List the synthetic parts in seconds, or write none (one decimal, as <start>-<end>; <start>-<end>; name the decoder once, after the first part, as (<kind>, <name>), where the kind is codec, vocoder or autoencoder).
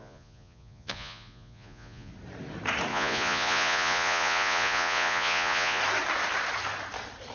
0.0-2.1 (vocoder, Vocos); 2.9-5.8